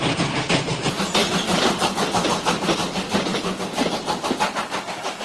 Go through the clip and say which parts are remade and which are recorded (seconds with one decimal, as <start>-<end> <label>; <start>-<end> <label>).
0.0-1.2 recorded; 1.2-3.9 remade; 3.9-5.2 recorded